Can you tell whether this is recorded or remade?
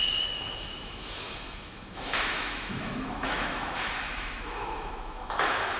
remade